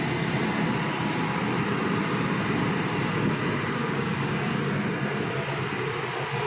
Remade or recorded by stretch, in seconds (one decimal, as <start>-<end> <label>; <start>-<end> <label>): 0.0-3.8 recorded; 3.8-4.5 remade; 4.5-6.5 recorded